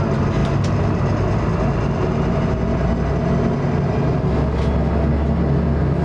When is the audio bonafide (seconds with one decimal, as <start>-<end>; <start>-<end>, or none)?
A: 0.0-6.0